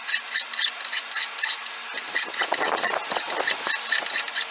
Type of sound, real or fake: real